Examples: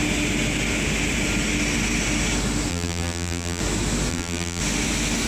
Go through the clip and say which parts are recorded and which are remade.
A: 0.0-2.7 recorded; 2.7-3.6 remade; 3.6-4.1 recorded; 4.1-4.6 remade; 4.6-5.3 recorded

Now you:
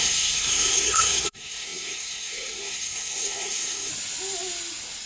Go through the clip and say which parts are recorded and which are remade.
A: 0.0-3.9 remade; 3.9-5.1 recorded

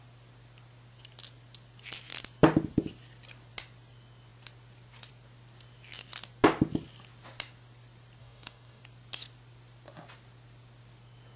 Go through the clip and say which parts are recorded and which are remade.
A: 0.0-8.2 recorded; 8.2-8.8 remade; 8.8-11.4 recorded